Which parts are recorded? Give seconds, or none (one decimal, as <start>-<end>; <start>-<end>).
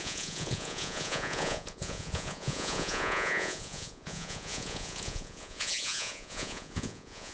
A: none